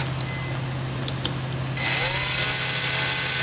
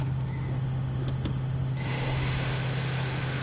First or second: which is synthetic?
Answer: second